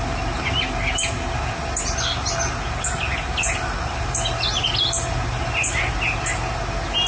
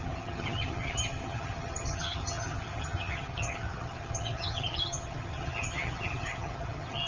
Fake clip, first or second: second